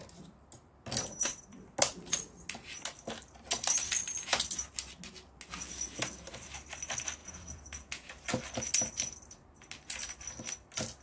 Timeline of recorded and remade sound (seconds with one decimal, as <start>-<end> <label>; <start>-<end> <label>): 0.0-7.2 recorded; 7.2-8.1 remade; 8.1-11.0 recorded